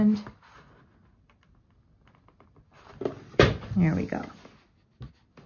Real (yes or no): yes